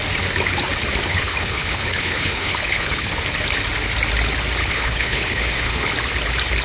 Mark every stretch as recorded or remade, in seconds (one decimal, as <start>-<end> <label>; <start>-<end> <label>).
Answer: 0.0-1.1 recorded; 1.1-3.1 remade; 3.1-4.6 recorded; 4.6-5.9 remade; 5.9-6.6 recorded